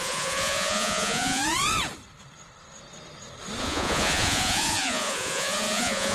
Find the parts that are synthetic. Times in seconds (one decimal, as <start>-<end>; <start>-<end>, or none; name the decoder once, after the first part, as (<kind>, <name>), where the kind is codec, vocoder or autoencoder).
0.0-1.4 (vocoder, Vocos); 3.6-6.1